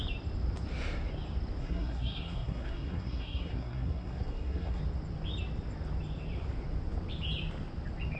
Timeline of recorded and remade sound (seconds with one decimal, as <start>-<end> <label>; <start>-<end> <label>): 0.0-1.6 recorded; 1.6-4.8 remade; 4.8-8.2 recorded